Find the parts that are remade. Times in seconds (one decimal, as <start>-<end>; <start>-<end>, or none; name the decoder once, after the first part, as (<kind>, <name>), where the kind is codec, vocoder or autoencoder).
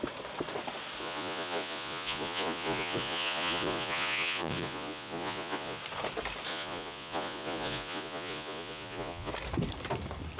1.0-5.8 (vocoder, Vocos); 6.5-9.3